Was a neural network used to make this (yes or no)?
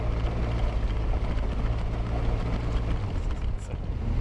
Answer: no